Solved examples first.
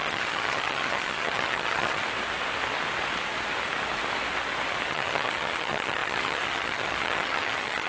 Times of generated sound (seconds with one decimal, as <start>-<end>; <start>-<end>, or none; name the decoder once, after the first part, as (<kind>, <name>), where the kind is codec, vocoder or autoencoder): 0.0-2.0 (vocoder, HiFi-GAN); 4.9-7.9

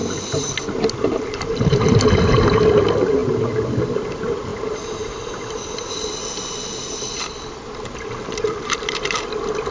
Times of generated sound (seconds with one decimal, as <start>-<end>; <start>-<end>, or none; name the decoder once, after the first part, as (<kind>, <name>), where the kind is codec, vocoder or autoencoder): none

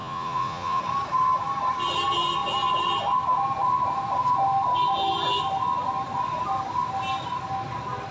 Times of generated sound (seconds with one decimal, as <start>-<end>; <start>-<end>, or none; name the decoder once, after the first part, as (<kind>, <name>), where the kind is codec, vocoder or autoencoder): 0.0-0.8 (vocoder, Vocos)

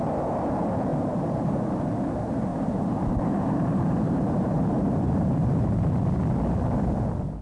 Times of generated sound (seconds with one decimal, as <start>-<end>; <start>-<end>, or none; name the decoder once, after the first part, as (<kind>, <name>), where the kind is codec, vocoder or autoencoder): 0.9-1.6 (vocoder, BigVGAN v2); 2.5-5.6